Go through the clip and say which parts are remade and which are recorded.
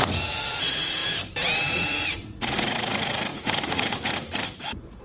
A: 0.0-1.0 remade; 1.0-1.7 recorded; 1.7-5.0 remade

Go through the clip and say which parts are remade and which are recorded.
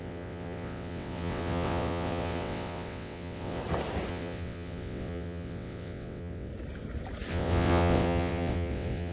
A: 0.0-3.6 remade; 3.6-4.1 recorded; 4.1-6.5 remade; 6.5-7.3 recorded; 7.3-9.1 remade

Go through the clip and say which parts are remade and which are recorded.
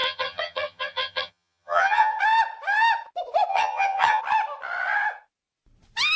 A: 0.0-2.2 remade; 2.2-3.5 recorded; 3.5-4.2 remade; 4.2-6.2 recorded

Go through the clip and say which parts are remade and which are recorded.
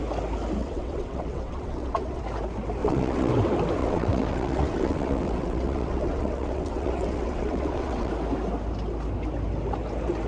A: 0.0-0.6 recorded; 0.6-2.2 remade; 2.2-2.8 recorded; 2.8-3.3 remade; 3.3-3.8 recorded; 3.8-8.1 remade; 8.1-10.3 recorded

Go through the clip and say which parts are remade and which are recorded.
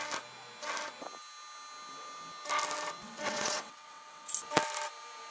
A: 0.0-3.0 recorded; 3.0-4.3 remade; 4.3-5.3 recorded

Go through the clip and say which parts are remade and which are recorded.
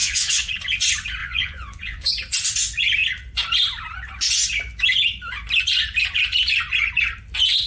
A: 0.0-0.5 remade; 0.5-1.2 recorded; 1.2-2.1 remade; 2.1-7.7 recorded